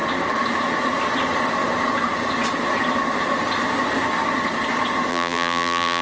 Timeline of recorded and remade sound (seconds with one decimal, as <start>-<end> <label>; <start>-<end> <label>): 0.0-5.1 recorded; 5.1-6.0 remade